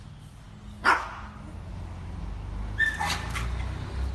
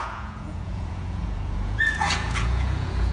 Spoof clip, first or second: second